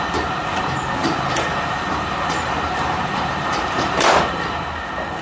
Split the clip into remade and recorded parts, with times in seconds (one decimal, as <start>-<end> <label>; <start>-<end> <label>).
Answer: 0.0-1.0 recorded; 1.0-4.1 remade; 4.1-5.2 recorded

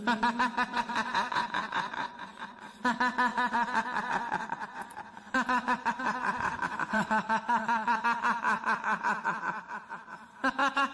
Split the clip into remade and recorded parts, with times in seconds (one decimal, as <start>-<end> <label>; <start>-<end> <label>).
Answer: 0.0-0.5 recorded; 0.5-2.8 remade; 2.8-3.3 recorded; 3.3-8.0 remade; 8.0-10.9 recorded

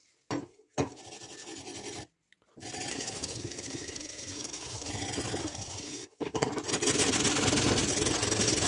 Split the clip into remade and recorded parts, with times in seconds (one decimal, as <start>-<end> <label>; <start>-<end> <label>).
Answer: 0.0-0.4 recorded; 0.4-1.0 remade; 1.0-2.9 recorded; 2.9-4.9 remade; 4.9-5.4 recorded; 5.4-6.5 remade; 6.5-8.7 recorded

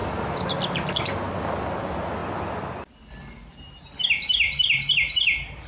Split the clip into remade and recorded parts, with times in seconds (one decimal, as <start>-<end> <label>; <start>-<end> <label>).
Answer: 0.0-5.7 recorded

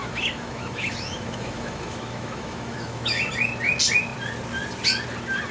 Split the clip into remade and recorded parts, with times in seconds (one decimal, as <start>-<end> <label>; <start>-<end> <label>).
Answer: 0.0-3.3 remade; 3.3-5.5 recorded

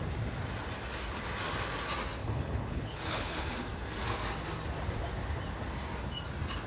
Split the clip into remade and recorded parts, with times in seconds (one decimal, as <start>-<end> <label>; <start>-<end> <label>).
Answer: 0.0-2.2 recorded; 2.2-3.4 remade; 3.4-6.7 recorded